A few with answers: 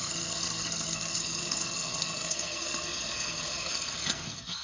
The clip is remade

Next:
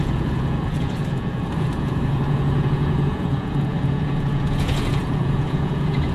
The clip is remade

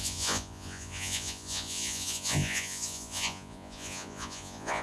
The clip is remade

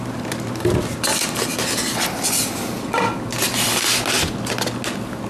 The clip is recorded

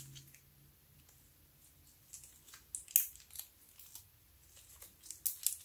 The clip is recorded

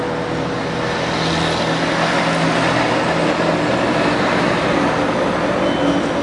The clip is recorded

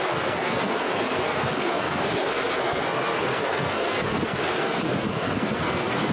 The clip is remade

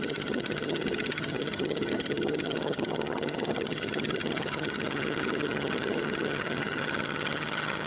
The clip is remade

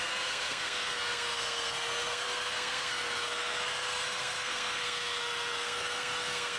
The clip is remade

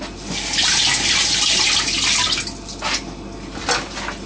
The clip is recorded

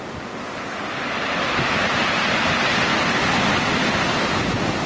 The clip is recorded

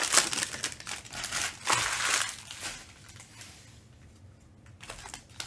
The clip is recorded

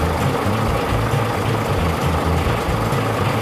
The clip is recorded